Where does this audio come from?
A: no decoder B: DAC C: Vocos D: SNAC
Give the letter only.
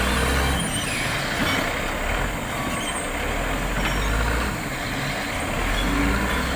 A